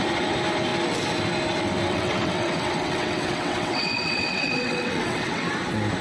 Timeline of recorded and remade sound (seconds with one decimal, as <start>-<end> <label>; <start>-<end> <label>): 0.0-1.9 recorded; 1.9-5.5 remade; 5.5-6.0 recorded